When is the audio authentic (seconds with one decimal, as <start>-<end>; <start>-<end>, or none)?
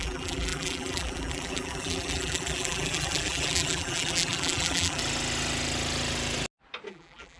5.0-6.9